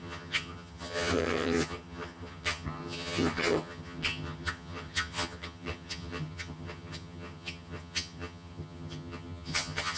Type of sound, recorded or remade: remade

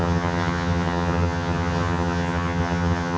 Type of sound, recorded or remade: remade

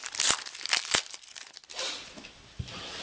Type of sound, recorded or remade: recorded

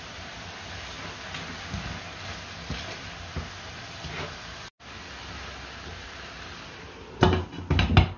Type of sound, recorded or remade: recorded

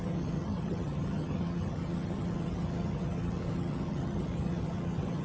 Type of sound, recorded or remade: remade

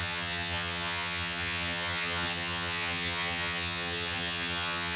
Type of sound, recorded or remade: remade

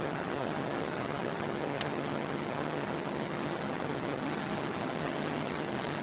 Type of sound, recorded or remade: remade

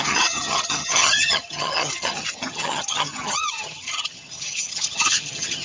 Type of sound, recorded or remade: remade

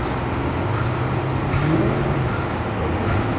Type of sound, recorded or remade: recorded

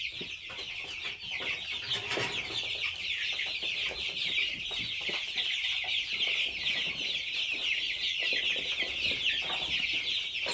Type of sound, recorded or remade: recorded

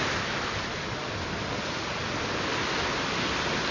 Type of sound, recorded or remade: recorded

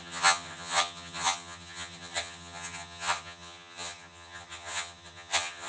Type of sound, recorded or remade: remade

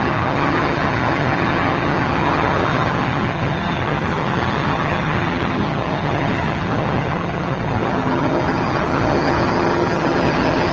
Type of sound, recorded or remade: remade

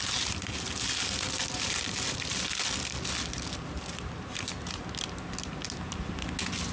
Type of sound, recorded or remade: recorded